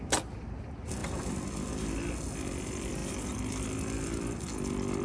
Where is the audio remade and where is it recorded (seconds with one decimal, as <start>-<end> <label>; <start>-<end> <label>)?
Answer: 0.0-5.0 recorded